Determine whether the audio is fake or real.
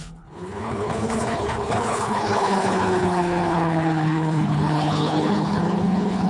fake